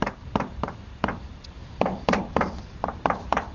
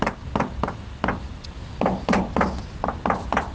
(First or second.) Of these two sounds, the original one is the second